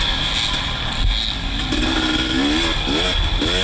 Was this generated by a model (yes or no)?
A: no